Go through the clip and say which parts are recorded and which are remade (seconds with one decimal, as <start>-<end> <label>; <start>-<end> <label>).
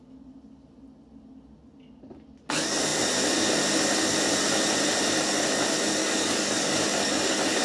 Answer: 0.0-6.0 recorded; 6.0-7.6 remade